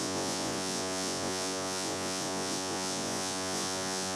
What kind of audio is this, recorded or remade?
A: remade